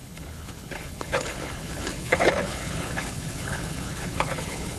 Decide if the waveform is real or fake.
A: fake